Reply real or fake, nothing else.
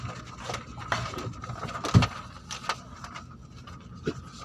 real